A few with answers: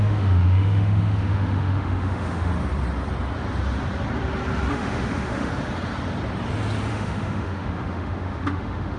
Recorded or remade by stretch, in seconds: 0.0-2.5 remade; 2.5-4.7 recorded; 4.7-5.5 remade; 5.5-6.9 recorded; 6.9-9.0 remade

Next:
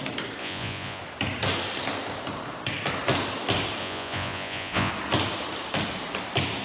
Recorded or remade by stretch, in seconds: 0.0-0.4 recorded; 0.4-1.0 remade; 1.0-3.8 recorded; 3.8-4.9 remade; 4.9-6.6 recorded

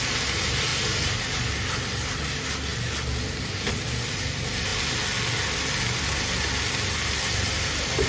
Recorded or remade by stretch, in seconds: 0.0-8.1 recorded

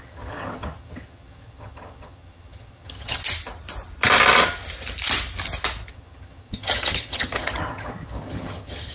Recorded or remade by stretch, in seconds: 0.0-3.2 remade; 3.2-5.9 recorded; 5.9-8.9 remade